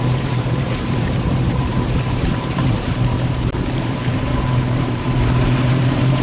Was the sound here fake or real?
fake